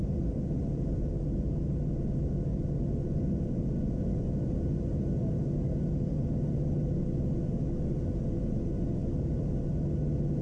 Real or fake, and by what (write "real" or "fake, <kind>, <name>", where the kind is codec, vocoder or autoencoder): real